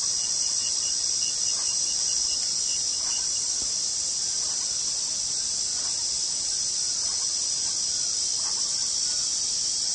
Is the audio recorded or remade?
recorded